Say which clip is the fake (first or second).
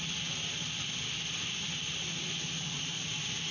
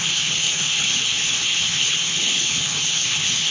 second